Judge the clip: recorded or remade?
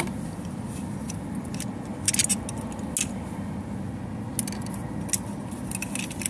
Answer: recorded